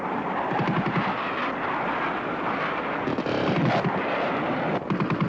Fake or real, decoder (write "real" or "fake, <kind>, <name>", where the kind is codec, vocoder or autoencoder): real